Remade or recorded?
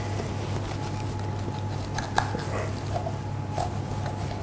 recorded